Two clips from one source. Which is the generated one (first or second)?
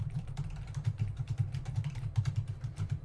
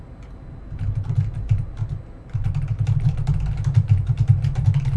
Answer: first